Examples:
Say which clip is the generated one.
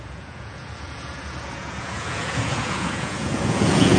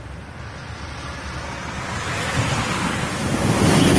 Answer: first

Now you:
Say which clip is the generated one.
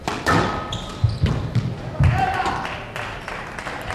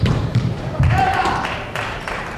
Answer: second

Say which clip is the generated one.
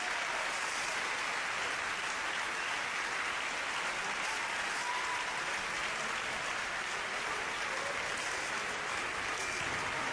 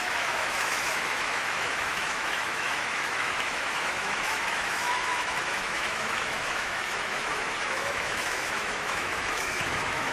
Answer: second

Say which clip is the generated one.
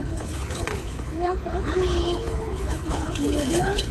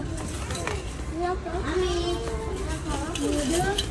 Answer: first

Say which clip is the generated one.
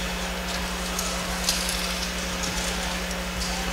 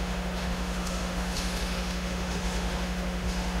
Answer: second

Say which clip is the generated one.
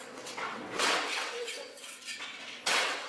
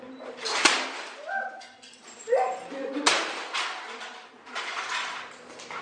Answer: first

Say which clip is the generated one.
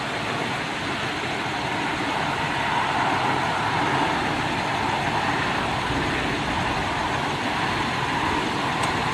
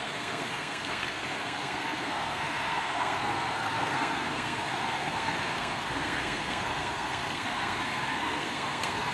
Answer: second